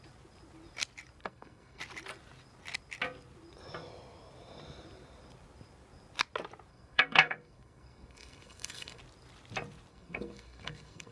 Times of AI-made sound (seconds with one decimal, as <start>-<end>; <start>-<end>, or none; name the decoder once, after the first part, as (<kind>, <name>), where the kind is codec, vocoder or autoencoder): 1.2-1.8 (codec, SNAC); 6.7-9.0; 9.9-11.1